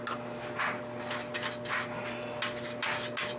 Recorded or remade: recorded